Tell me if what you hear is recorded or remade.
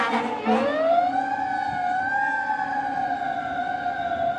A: recorded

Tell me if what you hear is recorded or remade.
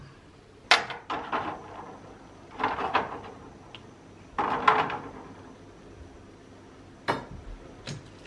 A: recorded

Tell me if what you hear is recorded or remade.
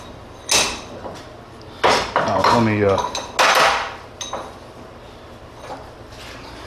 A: recorded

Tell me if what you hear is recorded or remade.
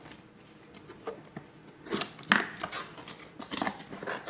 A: recorded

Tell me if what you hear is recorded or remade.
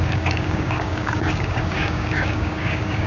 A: remade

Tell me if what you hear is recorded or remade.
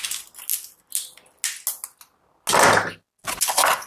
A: recorded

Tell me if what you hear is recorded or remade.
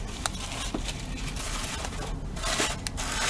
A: recorded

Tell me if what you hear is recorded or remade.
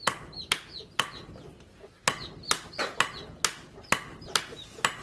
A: recorded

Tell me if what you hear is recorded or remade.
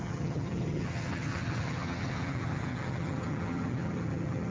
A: remade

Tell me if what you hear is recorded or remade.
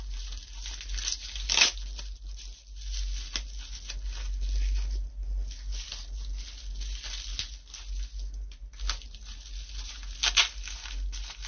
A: recorded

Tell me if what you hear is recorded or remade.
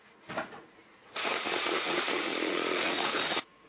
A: remade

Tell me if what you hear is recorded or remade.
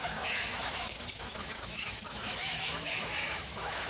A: remade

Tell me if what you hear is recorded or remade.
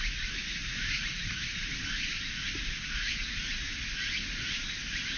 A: recorded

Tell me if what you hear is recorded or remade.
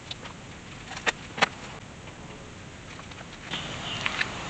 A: recorded